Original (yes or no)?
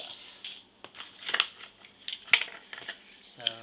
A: yes